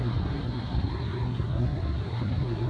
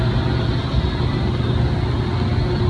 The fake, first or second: first